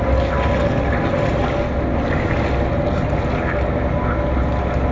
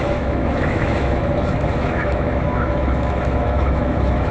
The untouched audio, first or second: first